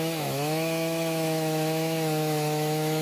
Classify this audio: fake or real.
fake